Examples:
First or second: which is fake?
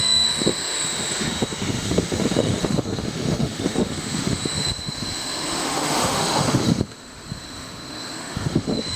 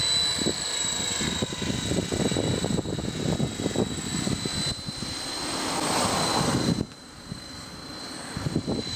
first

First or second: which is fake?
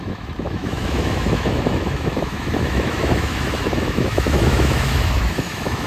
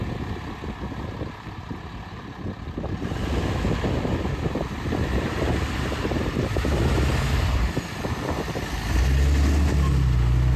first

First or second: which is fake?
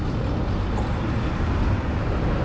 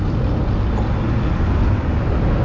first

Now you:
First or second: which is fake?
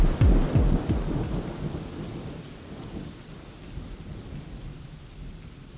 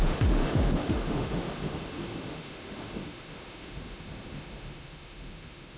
second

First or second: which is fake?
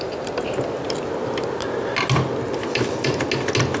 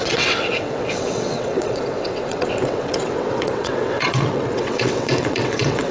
second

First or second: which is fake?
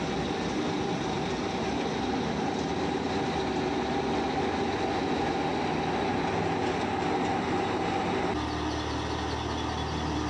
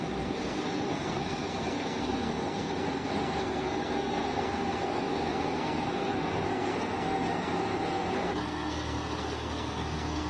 second